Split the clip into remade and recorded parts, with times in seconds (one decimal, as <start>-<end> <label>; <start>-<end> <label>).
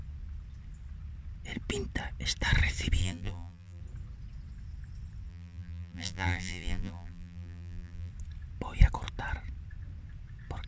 0.0-3.0 recorded; 3.0-3.8 remade; 3.8-5.3 recorded; 5.3-8.1 remade; 8.1-10.7 recorded